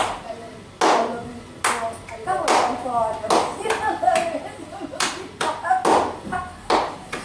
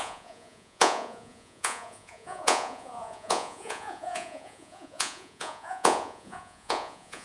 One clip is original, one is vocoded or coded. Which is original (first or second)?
first